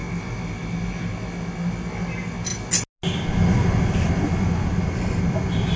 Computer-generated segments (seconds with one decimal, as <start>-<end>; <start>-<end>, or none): none